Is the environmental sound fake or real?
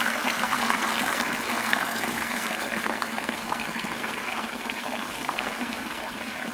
fake